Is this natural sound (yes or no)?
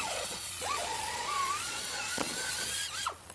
no